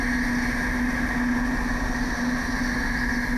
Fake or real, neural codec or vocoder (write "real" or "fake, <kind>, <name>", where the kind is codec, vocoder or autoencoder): real